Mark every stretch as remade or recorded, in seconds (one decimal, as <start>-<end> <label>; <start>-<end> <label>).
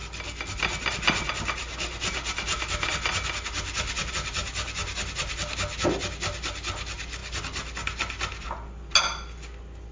0.0-9.9 recorded